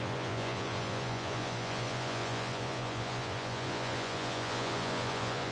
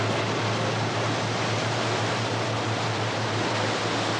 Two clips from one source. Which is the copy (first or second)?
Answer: first